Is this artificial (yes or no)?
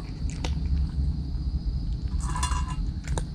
no